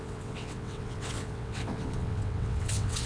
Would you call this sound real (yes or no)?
no